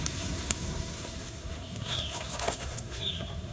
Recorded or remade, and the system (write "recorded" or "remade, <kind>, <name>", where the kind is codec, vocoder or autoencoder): remade, codec, SNAC